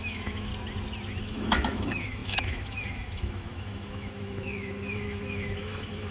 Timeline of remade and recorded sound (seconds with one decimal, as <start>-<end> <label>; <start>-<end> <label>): 0.0-0.5 remade; 0.5-1.2 recorded; 1.2-6.1 remade